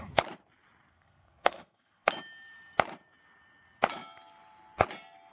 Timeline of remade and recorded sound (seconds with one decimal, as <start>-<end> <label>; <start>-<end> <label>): 0.0-0.9 recorded; 0.9-2.1 remade; 2.1-5.3 recorded